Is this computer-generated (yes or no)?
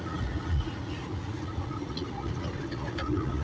yes